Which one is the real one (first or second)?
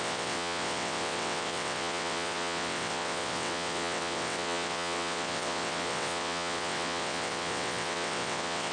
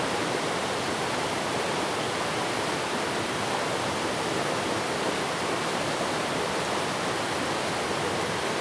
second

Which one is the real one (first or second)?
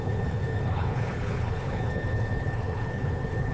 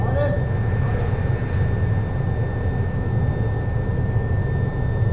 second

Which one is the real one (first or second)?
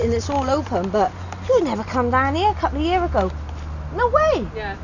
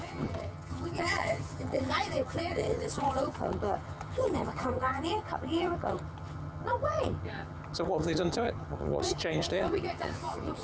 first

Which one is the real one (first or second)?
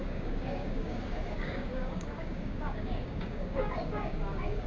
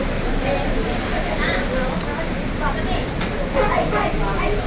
second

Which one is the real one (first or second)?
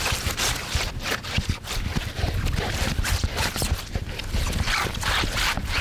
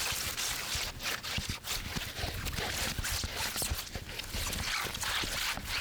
second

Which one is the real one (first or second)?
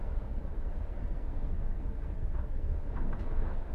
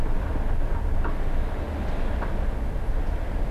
second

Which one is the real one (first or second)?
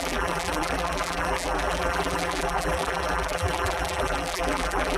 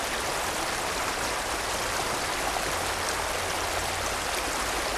second